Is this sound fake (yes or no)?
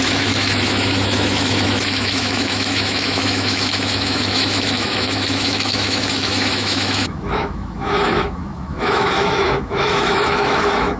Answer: yes